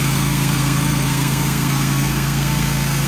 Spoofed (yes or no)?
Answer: yes